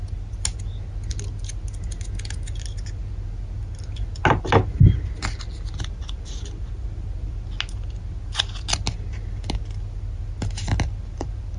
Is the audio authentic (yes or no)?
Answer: yes